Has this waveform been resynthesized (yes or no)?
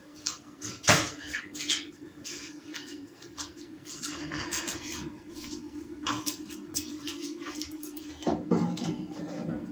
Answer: yes